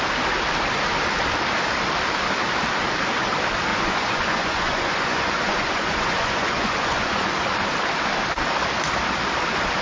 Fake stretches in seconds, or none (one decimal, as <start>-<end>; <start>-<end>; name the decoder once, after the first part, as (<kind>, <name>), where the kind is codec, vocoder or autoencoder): 3.7-7.3 (vocoder, Vocos)